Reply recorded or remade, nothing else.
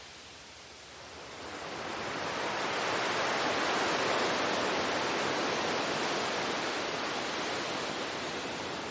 recorded